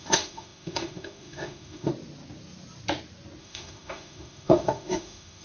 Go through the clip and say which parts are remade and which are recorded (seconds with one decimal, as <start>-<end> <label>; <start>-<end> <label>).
0.0-1.9 remade; 1.9-3.4 recorded; 3.4-5.4 remade